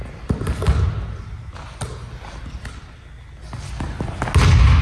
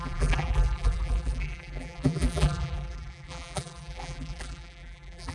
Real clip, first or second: first